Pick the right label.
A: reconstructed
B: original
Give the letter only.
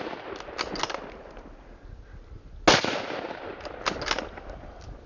B